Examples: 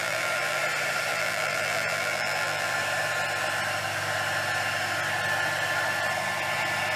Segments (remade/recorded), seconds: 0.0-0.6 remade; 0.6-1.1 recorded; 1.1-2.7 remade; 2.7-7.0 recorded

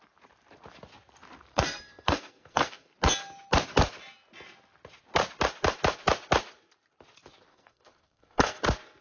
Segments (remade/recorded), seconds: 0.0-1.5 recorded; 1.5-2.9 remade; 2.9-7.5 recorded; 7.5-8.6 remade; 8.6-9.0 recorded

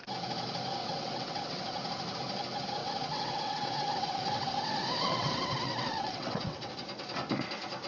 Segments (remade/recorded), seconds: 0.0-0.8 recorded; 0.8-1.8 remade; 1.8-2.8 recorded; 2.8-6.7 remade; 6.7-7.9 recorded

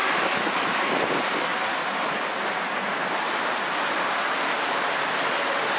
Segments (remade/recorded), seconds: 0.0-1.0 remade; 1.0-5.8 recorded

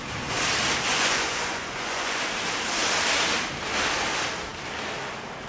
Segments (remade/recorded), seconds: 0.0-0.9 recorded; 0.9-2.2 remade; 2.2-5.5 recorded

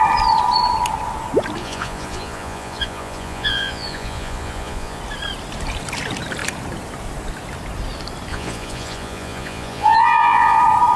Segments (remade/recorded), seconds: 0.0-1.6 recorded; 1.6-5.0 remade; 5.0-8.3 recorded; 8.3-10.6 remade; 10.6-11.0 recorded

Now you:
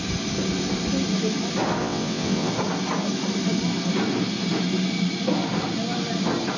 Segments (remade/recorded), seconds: 0.0-1.8 recorded; 1.8-2.5 remade; 2.5-6.6 recorded

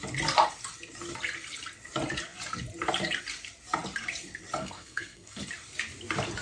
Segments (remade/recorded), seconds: 0.0-4.6 recorded; 4.6-5.4 remade; 5.4-6.4 recorded